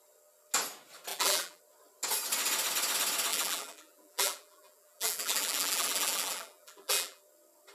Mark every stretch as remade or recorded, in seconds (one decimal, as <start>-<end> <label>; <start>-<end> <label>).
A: 0.0-1.1 recorded; 1.1-1.6 remade; 1.6-3.3 recorded; 3.3-7.2 remade; 7.2-7.7 recorded